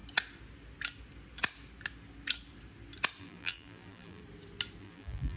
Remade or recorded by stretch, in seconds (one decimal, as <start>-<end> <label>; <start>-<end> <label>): 0.0-3.2 recorded; 3.2-4.2 remade; 4.2-4.8 recorded; 4.8-5.4 remade

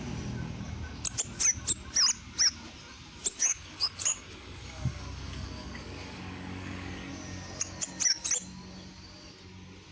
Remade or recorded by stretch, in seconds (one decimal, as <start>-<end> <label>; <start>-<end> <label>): 0.0-3.4 recorded; 3.4-7.1 remade; 7.1-9.9 recorded

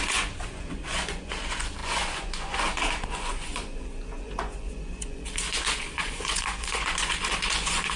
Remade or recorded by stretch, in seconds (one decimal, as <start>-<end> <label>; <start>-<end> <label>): 0.0-8.0 remade